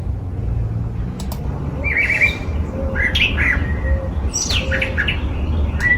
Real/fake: real